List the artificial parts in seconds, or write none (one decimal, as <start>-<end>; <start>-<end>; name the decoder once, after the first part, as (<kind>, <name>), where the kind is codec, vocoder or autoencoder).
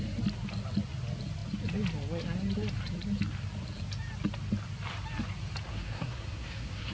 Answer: 5.7-6.9 (codec, SNAC)